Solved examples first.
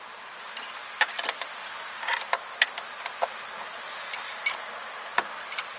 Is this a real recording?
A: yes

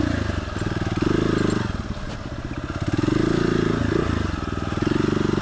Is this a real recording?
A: yes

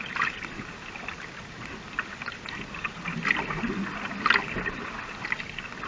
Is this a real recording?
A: yes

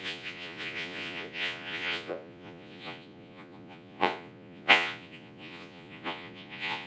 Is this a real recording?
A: no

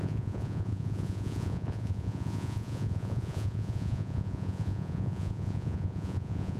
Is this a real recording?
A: no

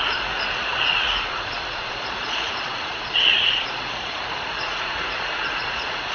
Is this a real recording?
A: no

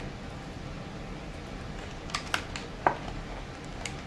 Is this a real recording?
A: yes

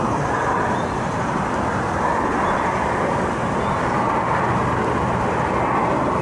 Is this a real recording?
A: yes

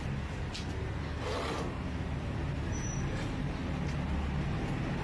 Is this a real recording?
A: yes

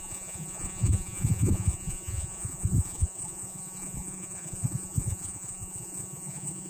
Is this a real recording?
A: no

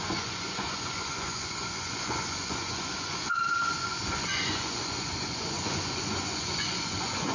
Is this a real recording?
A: no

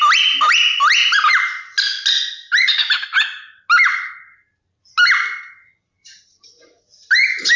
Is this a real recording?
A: yes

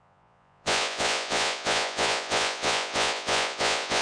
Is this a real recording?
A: no